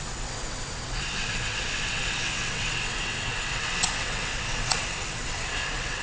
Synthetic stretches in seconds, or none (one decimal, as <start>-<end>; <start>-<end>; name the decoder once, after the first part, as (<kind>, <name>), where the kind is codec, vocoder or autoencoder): 0.0-6.0 (vocoder, WaveNeXt)